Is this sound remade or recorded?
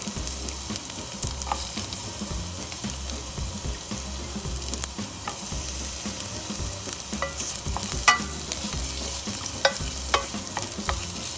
recorded